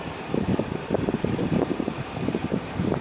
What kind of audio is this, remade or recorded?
remade